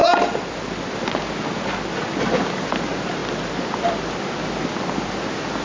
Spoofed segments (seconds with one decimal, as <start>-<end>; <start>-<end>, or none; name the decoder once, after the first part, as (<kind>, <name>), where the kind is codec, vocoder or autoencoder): none